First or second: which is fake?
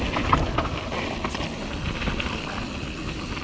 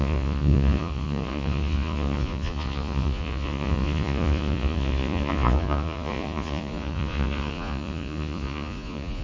second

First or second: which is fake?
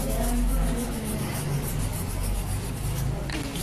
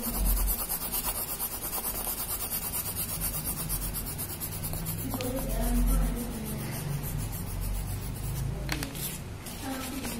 first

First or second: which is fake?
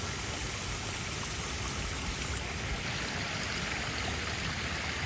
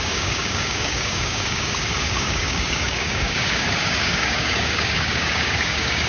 second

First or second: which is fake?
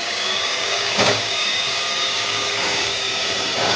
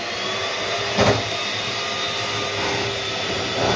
first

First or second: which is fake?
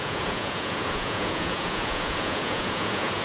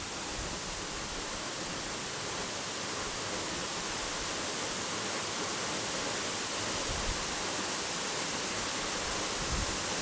first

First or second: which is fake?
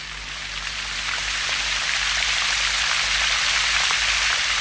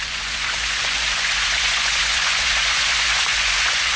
second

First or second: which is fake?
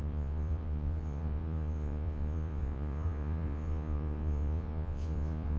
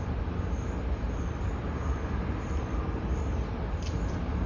first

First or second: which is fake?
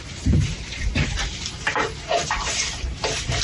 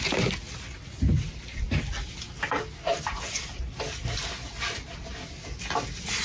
first